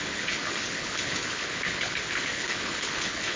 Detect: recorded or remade remade